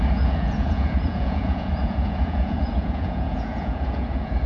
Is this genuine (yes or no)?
no